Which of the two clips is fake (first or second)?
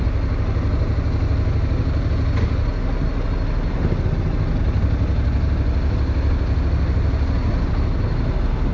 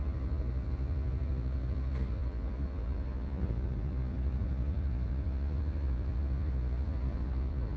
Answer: second